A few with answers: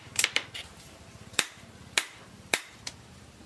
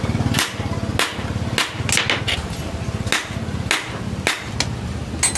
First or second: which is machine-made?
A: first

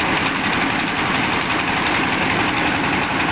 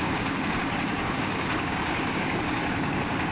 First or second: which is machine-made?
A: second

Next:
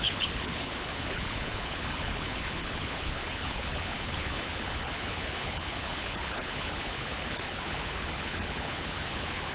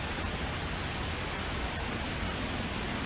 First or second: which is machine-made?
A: first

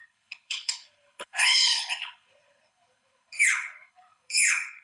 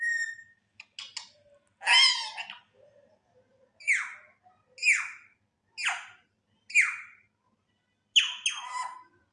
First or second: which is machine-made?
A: first